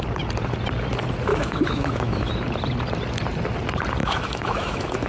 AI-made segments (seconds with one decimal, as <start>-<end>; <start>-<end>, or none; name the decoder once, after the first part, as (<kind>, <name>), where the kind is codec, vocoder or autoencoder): 1.3-2.3 (autoencoder, DAC-VAE); 4.0-5.1